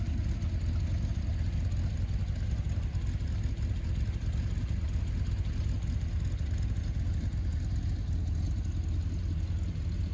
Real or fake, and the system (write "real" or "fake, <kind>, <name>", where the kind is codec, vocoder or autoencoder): real